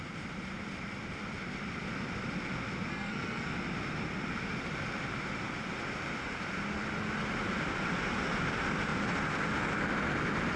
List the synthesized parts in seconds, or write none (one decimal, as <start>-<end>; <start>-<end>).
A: 2.9-3.5